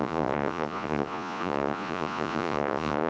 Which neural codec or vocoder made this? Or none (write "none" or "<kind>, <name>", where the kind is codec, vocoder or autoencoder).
vocoder, Vocos